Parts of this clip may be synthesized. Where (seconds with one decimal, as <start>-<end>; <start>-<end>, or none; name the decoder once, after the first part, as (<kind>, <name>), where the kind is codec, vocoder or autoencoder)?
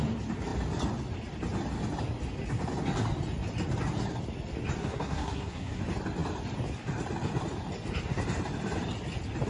4.8-5.8 (codec, SNAC)